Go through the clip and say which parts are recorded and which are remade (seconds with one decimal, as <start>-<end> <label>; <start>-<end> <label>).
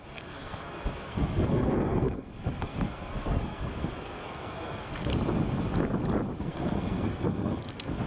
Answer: 0.0-5.1 remade; 5.1-6.4 recorded; 6.4-8.1 remade